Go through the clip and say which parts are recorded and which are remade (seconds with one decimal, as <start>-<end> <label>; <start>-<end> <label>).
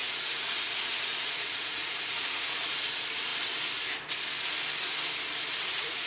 0.0-3.3 remade; 3.3-5.6 recorded; 5.6-6.1 remade